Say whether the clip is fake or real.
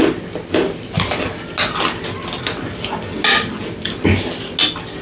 real